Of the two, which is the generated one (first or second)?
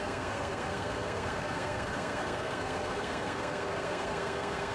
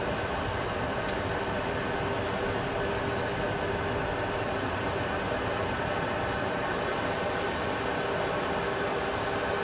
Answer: first